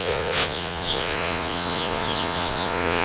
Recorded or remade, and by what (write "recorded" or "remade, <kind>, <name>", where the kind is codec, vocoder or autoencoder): remade, vocoder, Vocos